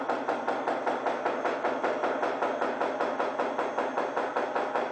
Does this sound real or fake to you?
real